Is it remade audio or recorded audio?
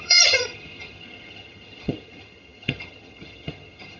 remade